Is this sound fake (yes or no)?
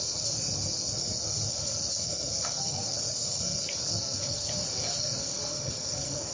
yes